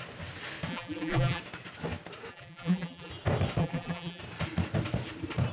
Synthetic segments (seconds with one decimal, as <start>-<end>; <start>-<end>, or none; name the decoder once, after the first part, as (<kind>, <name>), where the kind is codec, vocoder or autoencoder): 0.7-1.4 (vocoder, BigVGAN v2); 2.3-3.1; 3.6-4.2